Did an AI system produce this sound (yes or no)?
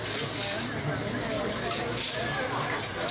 no